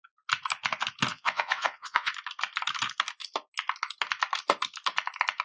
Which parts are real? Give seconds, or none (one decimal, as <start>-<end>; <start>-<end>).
0.0-1.1; 2.1-5.4